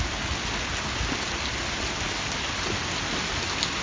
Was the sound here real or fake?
real